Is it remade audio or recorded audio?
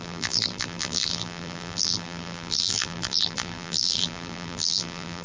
remade